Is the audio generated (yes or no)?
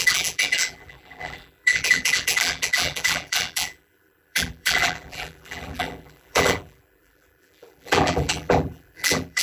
yes